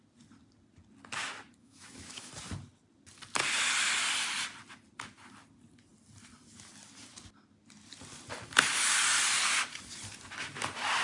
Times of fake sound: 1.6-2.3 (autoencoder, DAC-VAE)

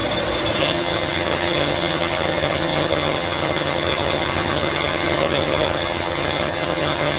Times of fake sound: 0.6-7.2 (vocoder, HiFi-GAN)

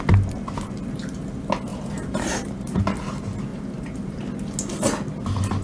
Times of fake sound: 1.7-2.8 (vocoder, BigVGAN v2); 3.5-4.2

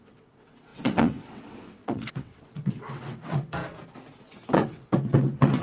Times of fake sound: 0.0-3.6 (vocoder, WaveNeXt); 4.1-5.6

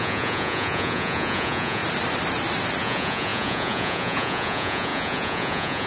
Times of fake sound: 0.0-1.8 (vocoder, Vocos); 2.8-5.9

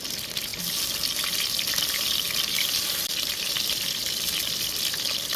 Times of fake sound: 0.0-0.5 (vocoder, BigVGAN v2); 1.7-5.4